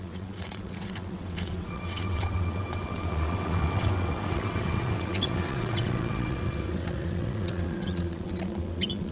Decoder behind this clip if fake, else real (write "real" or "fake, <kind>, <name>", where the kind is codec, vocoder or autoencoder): fake, vocoder, WaveNeXt